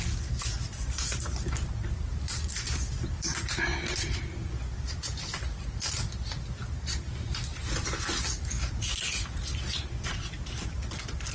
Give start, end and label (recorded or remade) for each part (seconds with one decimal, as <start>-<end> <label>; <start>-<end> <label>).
0.0-11.3 recorded